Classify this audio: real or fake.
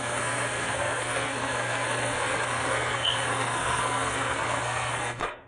fake